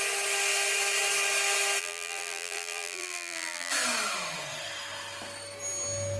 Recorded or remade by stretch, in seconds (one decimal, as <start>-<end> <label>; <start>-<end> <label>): 0.0-1.8 recorded; 1.8-3.7 remade; 3.7-6.2 recorded